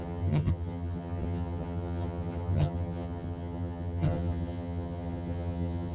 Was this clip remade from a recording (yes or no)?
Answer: yes